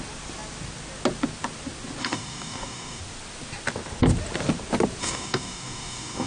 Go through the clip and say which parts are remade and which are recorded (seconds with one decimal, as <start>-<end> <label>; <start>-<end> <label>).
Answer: 0.0-2.0 recorded; 2.0-3.0 remade; 3.0-5.0 recorded; 5.0-6.3 remade